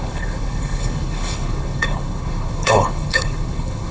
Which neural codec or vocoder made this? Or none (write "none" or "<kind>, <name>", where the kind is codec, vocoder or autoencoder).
codec, HILCodec